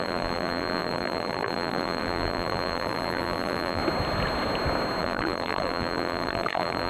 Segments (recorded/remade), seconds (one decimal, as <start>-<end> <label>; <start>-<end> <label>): 0.0-3.8 remade; 3.8-5.0 recorded; 5.0-6.9 remade